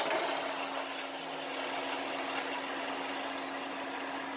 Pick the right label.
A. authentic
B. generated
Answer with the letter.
A